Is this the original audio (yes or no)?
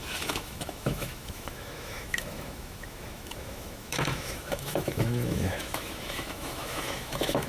no